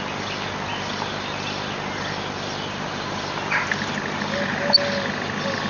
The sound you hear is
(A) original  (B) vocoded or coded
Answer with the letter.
A